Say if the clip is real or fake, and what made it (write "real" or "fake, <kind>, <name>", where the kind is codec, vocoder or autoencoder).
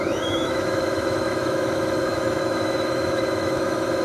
fake, autoencoder, DAC-VAE